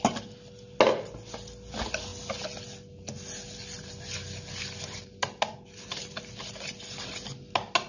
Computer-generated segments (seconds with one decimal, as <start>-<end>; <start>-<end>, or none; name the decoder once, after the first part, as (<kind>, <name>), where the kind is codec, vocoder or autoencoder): none

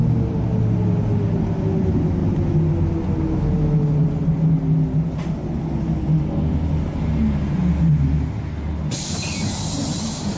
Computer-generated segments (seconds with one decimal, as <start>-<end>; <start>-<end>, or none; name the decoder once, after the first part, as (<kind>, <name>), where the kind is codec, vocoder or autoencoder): none